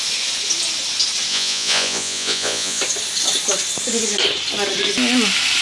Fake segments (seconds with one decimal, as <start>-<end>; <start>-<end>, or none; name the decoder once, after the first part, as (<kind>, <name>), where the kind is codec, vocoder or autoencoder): 1.3-2.8 (vocoder, Vocos)